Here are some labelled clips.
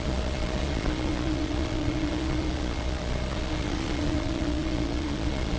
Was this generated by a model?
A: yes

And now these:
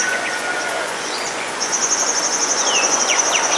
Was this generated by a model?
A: yes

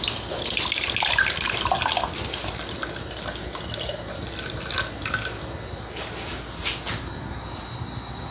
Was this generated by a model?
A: no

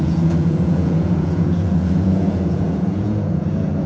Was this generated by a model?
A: yes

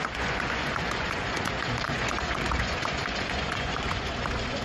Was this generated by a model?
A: yes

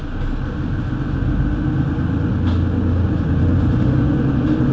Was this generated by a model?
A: no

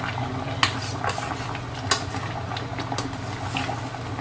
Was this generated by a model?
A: no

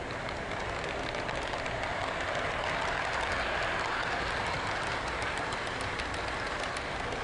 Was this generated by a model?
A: no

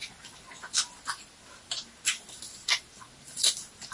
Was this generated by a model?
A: no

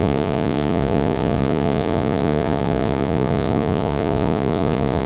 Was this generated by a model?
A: yes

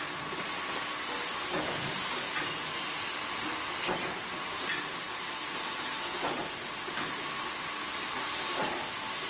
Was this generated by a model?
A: no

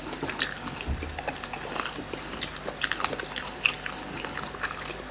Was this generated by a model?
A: no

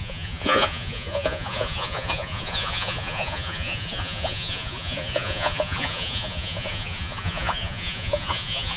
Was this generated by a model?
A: yes